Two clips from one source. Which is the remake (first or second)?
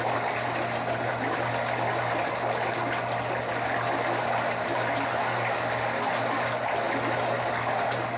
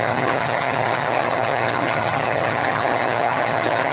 second